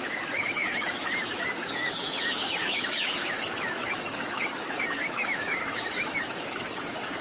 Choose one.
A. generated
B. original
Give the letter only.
A